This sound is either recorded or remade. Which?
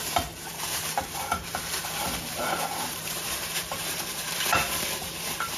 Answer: remade